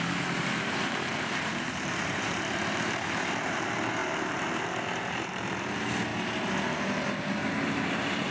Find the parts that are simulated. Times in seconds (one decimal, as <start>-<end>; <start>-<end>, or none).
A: 0.0-6.1; 7.2-8.3